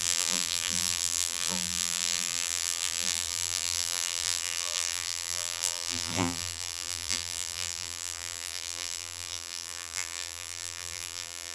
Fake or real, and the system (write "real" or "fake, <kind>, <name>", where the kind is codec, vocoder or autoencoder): fake, vocoder, BigVGAN v2